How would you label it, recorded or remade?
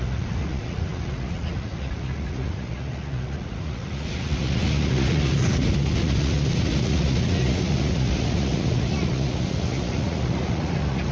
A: remade